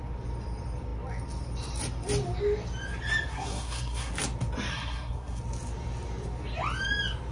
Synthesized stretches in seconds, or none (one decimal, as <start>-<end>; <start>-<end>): 3.3-4.1; 4.7-5.4